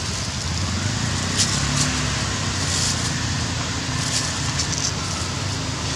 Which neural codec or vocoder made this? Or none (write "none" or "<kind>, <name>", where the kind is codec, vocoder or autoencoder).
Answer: none